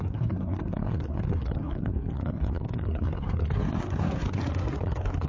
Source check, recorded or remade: remade